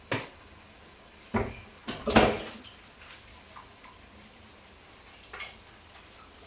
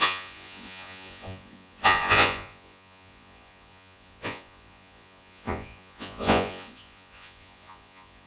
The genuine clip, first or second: first